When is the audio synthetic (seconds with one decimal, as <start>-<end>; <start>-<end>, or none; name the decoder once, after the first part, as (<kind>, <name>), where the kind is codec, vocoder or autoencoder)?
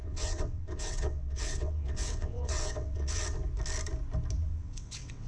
0.0-3.2 (vocoder, WaveNeXt); 4.6-5.3